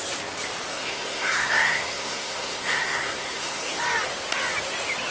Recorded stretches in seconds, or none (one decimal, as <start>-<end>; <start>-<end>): 0.0-0.7; 3.8-5.1